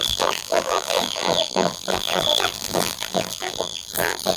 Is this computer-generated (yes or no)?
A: yes